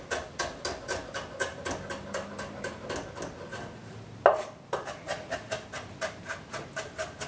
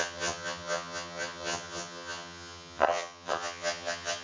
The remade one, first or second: second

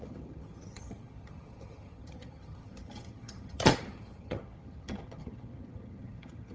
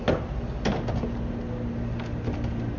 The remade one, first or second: first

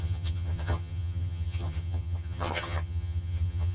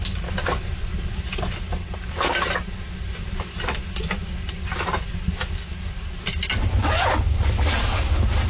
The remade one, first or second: first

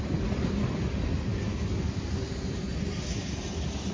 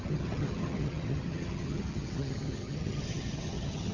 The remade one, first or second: second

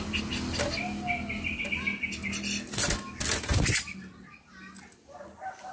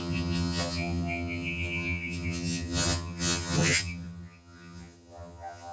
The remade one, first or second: second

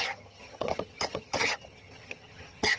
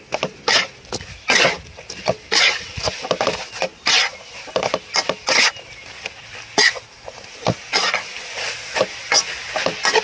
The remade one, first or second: first